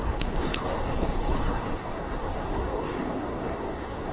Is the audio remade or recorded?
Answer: remade